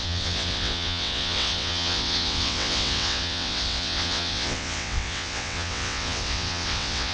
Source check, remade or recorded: remade